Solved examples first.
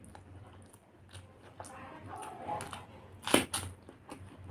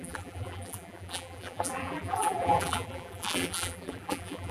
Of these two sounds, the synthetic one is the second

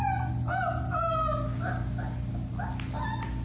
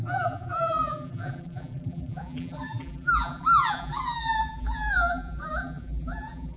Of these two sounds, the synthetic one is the second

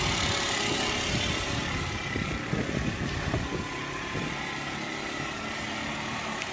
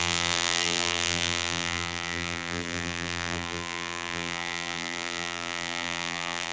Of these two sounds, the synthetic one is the second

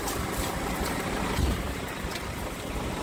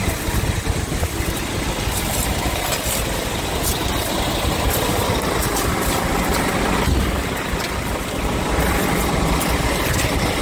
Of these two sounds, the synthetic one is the first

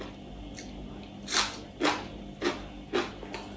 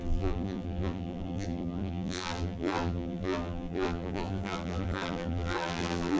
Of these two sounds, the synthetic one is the second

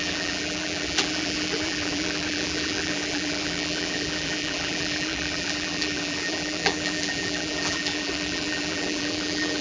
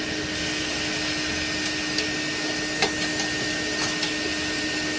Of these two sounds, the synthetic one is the first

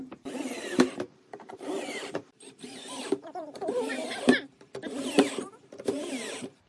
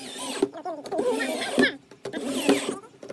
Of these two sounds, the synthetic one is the first